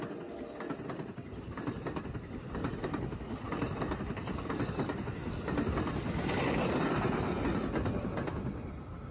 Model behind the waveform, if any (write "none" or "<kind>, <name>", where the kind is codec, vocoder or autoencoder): none